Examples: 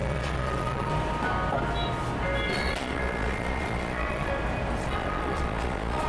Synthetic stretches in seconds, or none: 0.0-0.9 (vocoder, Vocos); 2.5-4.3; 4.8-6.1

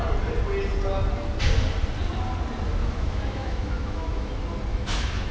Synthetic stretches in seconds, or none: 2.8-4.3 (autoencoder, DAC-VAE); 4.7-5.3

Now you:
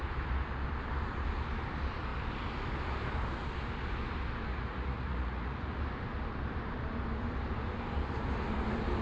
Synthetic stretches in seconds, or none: 4.5-5.8 (vocoder, Vocos)